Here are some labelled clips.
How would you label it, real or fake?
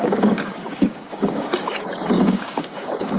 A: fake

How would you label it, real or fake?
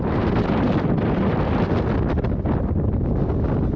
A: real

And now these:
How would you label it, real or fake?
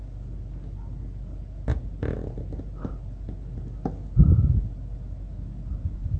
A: real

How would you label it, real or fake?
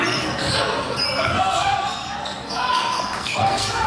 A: fake